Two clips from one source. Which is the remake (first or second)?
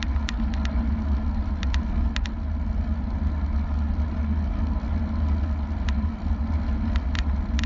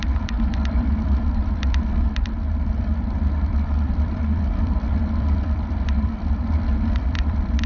second